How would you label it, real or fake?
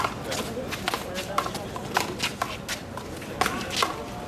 real